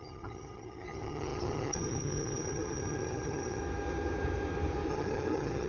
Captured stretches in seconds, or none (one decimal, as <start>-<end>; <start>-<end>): 3.6-4.9